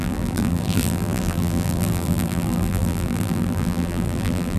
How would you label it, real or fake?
fake